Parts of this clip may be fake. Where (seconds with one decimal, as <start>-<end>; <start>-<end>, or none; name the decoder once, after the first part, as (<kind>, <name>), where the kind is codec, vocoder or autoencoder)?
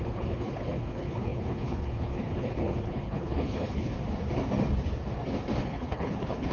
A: 0.0-3.9 (codec, HILCodec); 5.6-6.5